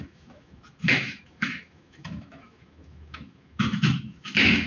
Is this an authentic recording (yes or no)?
no